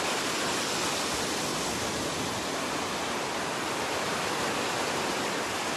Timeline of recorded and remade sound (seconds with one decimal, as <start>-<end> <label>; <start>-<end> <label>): 0.0-5.8 recorded